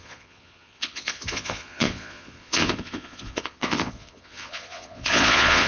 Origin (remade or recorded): remade